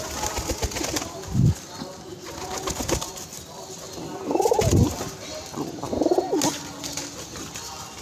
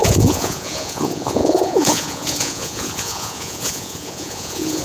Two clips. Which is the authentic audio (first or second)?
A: first